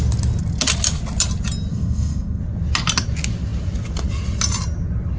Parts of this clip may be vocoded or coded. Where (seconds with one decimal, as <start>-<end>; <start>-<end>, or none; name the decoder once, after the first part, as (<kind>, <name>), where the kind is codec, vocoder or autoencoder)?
1.7-2.4 (codec, SNAC)